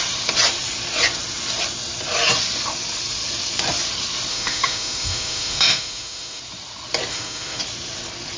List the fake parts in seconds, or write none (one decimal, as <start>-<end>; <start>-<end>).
4.3-6.4; 7.1-7.6